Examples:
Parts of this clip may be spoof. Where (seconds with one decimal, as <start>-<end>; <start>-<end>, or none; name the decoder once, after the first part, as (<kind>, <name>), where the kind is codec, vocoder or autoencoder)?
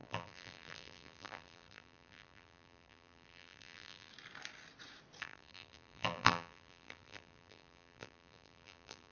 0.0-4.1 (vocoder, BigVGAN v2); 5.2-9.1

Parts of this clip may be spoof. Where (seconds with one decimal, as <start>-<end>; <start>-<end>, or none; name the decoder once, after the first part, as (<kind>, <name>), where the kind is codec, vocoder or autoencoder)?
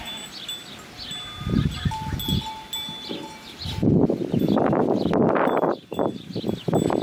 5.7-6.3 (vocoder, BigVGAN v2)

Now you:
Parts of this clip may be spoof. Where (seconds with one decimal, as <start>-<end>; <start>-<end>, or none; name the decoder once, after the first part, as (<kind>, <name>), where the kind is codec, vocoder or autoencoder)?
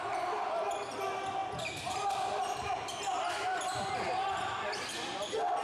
none